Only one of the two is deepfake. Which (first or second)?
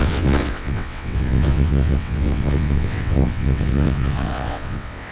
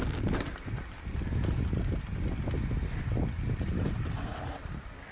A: first